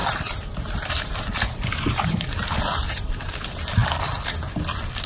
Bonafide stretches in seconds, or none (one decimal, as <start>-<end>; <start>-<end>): 3.8-5.1